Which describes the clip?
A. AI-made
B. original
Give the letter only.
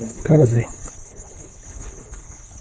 A